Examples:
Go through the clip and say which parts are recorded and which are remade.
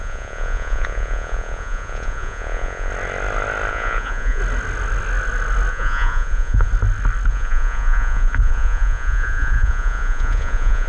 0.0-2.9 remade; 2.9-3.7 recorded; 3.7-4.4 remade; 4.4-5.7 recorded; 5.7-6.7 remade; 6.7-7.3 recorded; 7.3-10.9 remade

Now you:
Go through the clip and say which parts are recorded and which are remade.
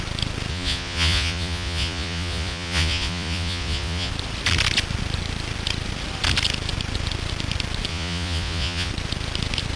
0.0-0.5 recorded; 0.5-4.1 remade; 4.1-7.9 recorded; 7.9-8.9 remade; 8.9-9.8 recorded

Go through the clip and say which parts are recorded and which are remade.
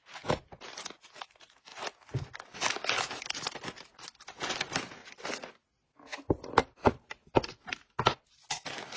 0.0-9.0 recorded